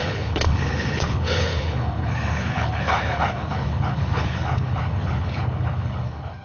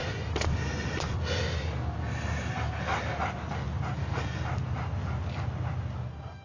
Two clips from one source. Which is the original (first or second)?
second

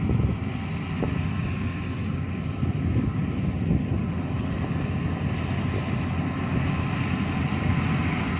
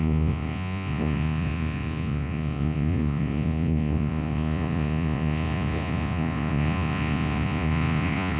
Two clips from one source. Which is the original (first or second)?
first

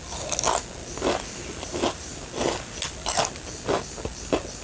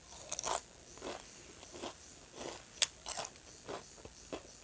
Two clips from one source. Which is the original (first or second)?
first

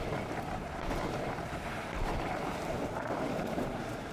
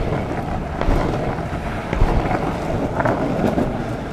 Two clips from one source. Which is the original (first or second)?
second